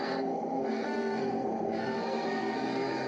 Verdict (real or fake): fake